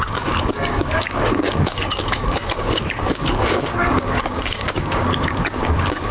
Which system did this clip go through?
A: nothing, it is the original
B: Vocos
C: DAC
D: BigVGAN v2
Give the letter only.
C